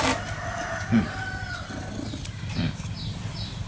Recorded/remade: recorded